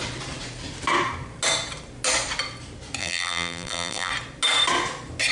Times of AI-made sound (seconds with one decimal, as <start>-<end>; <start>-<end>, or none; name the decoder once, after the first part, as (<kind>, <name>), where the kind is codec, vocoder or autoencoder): 3.0-4.1 (vocoder, BigVGAN v2)